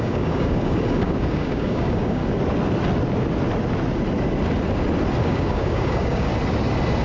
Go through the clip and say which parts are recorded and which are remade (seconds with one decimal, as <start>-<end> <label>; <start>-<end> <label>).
0.0-2.2 remade; 2.2-5.2 recorded; 5.2-6.3 remade; 6.3-7.0 recorded